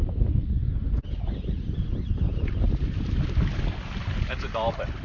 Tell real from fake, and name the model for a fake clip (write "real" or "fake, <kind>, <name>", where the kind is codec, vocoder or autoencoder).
real